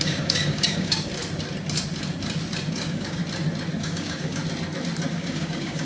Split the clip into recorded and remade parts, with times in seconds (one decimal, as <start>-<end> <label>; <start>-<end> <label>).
0.0-1.1 remade; 1.1-2.7 recorded; 2.7-3.2 remade; 3.2-3.8 recorded; 3.8-4.4 remade; 4.4-5.1 recorded; 5.1-5.8 remade

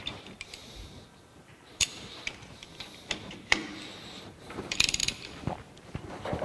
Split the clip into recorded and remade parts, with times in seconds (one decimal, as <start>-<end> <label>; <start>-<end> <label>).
0.0-0.6 remade; 0.6-1.2 recorded; 1.2-2.7 remade; 2.7-3.2 recorded; 3.2-5.0 remade; 5.0-5.8 recorded; 5.8-6.4 remade

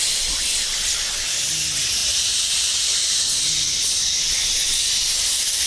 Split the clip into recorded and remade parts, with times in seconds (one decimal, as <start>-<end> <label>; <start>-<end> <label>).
0.0-2.0 recorded; 2.0-3.2 remade; 3.2-5.7 recorded

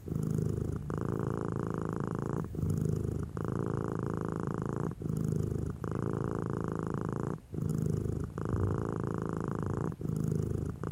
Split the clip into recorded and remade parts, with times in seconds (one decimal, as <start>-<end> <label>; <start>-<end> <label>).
0.0-10.9 recorded

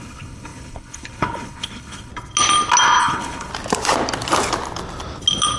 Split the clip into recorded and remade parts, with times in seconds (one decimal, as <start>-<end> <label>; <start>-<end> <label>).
0.0-2.1 remade; 2.1-3.0 recorded; 3.0-3.5 remade; 3.5-5.6 recorded

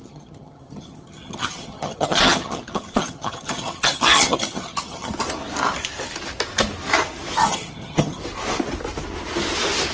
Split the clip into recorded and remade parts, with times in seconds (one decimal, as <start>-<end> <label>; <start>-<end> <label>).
0.0-5.1 remade; 5.1-7.4 recorded; 7.4-8.2 remade; 8.2-9.9 recorded

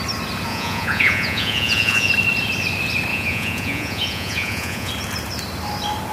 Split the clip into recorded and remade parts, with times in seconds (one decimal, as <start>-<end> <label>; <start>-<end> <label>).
0.0-0.5 recorded; 0.5-2.1 remade; 2.1-3.1 recorded; 3.1-4.9 remade; 4.9-6.1 recorded

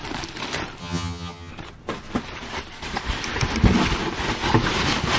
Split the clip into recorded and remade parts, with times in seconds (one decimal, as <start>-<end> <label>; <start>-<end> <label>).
0.0-0.8 recorded; 0.8-1.5 remade; 1.5-5.2 recorded